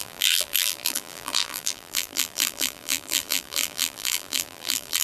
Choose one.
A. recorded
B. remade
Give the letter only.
B